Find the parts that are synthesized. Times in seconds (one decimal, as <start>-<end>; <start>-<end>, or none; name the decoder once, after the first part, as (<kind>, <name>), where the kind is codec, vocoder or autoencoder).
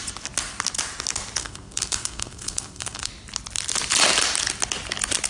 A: 1.4-3.1 (codec, SNAC)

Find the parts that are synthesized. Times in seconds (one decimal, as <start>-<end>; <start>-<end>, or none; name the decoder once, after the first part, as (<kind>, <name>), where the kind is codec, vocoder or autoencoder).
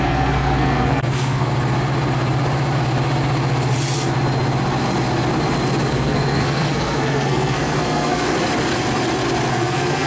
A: 0.0-1.5 (codec, SNAC); 5.9-8.3; 9.5-10.1